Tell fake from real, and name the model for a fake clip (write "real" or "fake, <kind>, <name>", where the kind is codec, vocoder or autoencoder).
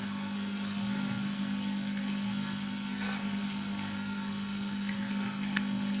fake, codec, SNAC